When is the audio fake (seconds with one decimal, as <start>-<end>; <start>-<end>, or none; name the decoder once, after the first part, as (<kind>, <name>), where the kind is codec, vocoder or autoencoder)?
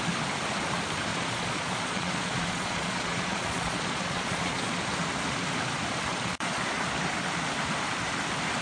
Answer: 1.1-4.8 (vocoder, Vocos); 6.1-6.6